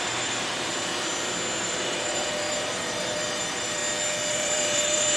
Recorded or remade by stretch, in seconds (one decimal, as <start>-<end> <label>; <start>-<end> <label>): 0.0-0.7 remade; 0.7-1.6 recorded; 1.6-3.8 remade; 3.8-4.3 recorded; 4.3-5.2 remade

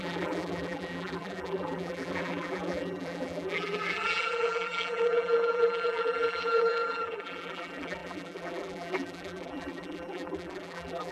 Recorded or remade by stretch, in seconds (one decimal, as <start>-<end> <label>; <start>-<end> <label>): 0.0-11.1 remade

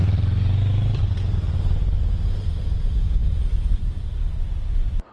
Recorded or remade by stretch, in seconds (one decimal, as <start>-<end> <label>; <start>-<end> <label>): 0.0-1.0 remade; 1.0-5.1 recorded

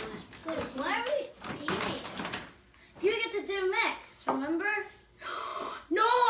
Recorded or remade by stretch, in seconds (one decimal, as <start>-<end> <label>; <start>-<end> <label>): 0.0-0.4 recorded; 0.4-4.1 remade; 4.1-5.5 recorded; 5.5-6.3 remade

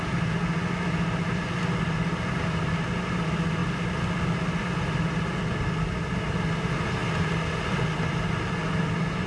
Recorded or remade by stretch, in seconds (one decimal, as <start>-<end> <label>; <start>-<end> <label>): 0.0-7.0 recorded; 7.0-8.3 remade; 8.3-9.3 recorded

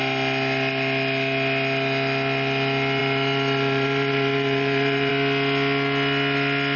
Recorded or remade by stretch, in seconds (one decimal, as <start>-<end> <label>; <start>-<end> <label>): 0.0-3.0 recorded; 3.0-5.1 remade; 5.1-6.8 recorded

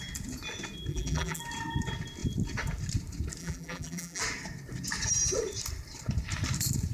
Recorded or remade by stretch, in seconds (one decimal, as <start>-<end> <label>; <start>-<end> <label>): 0.0-0.9 recorded; 0.9-1.4 remade; 1.4-3.4 recorded; 3.4-4.2 remade; 4.2-6.9 recorded

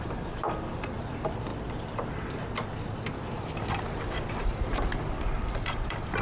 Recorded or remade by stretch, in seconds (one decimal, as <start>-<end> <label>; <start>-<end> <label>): 0.0-1.5 remade; 1.5-5.2 recorded; 5.2-6.2 remade